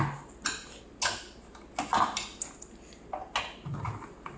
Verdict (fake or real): real